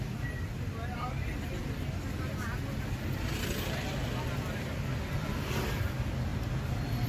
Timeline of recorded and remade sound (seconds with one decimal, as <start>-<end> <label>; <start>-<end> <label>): 0.0-7.1 recorded